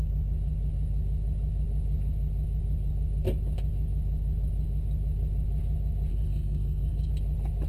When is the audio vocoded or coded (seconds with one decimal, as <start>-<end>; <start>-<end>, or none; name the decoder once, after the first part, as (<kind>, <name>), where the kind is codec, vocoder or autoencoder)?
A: 6.1-7.1 (codec, SNAC)